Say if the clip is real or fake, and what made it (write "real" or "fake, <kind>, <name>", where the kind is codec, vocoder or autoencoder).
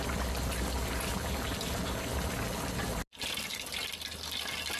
real